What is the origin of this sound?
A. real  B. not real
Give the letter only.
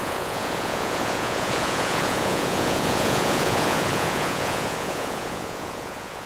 B